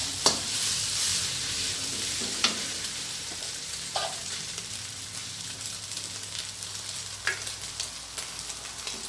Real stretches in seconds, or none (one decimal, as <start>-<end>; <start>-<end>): 4.6-5.2; 5.7-9.1